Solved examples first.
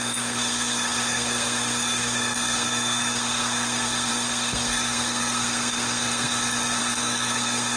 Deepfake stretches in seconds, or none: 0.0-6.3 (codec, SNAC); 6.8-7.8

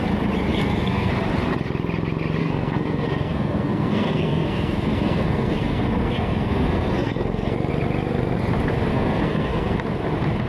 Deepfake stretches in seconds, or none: 0.5-1.1 (codec, SNAC); 2.4-7.7; 8.9-9.8

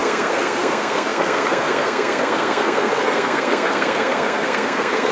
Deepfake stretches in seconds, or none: 0.0-5.1 (codec, SNAC)

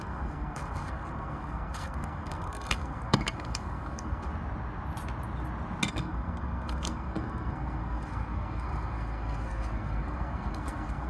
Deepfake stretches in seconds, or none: 0.0-4.3 (codec, SNAC); 5.9-11.1

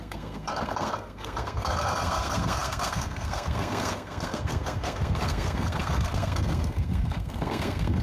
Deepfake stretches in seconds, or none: 0.0-8.0 (codec, SNAC)

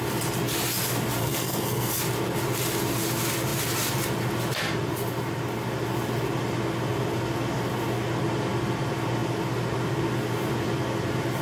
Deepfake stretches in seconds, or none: 1.2-2.0 (codec, SNAC)